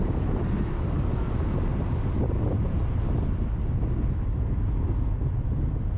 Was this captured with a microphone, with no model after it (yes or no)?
yes